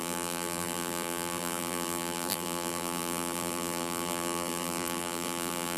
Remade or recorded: remade